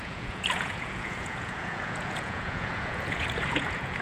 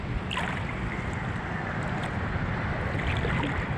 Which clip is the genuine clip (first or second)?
second